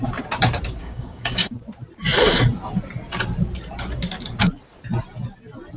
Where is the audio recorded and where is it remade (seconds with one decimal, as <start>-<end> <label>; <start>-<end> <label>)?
0.0-0.8 recorded; 0.8-1.5 remade; 1.5-5.8 recorded